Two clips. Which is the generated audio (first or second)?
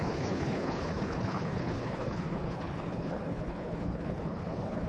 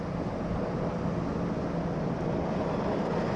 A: first